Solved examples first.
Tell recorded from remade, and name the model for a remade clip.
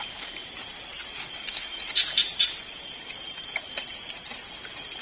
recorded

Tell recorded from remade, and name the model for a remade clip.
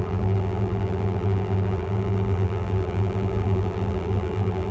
remade, vocoder, BigVGAN v2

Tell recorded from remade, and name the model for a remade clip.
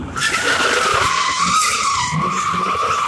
remade, vocoder, BigVGAN v2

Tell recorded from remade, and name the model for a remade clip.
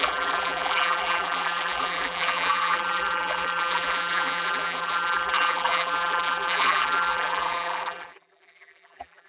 remade, vocoder, BigVGAN v2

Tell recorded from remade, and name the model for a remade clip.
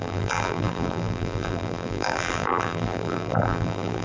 remade, vocoder, BigVGAN v2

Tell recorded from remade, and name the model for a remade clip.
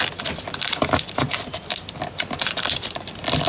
remade, vocoder, BigVGAN v2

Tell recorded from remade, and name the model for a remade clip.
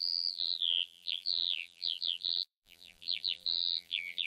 remade, vocoder, BigVGAN v2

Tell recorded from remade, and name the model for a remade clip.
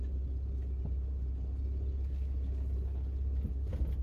recorded